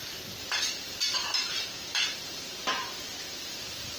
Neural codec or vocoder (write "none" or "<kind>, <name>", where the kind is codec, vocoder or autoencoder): vocoder, BigVGAN v2